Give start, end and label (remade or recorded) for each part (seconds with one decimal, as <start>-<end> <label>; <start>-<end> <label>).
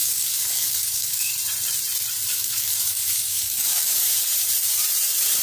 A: 0.0-1.3 remade; 1.3-2.3 recorded; 2.3-4.2 remade; 4.2-5.4 recorded